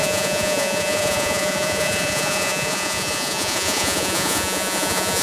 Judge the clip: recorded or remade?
remade